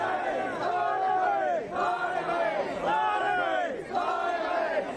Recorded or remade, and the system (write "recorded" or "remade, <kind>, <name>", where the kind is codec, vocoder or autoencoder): recorded